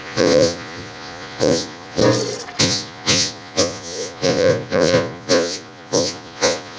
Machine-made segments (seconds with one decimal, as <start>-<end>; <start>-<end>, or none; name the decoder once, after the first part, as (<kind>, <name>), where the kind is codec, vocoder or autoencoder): 0.0-2.0 (vocoder, Vocos); 2.6-6.8